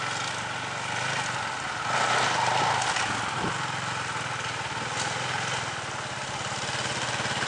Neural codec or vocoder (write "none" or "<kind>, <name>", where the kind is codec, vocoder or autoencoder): none